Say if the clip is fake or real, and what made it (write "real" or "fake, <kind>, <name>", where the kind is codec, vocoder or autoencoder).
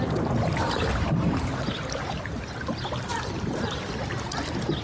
real